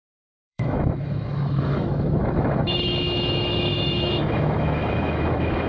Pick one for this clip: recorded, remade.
remade